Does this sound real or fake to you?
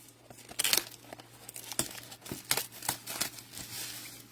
real